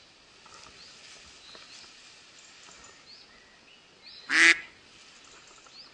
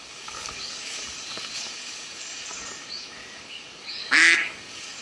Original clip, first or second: first